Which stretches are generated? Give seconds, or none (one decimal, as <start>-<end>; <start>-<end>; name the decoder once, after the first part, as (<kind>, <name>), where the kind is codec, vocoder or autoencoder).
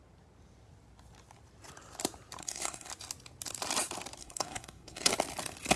2.4-2.9 (codec, SNAC); 4.2-5.1